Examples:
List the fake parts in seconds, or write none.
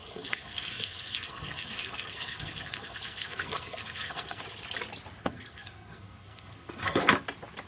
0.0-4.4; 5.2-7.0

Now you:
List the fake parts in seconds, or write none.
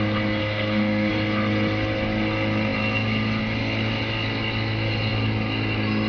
0.4-1.1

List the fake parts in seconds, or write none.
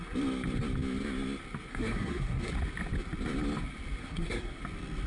1.7-2.5; 4.0-4.6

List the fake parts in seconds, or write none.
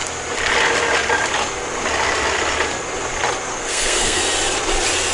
3.5-4.2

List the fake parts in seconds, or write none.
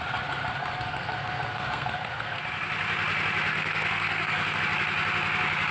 0.6-2.4; 3.5-4.6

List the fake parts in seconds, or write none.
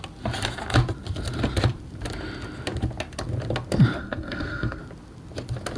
4.0-4.8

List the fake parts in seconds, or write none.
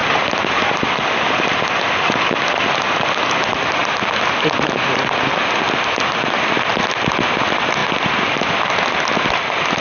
none